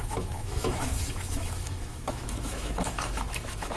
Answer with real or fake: fake